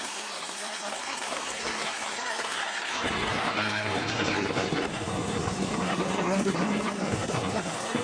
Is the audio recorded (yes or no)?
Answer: no